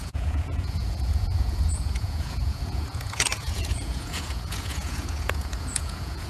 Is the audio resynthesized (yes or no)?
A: yes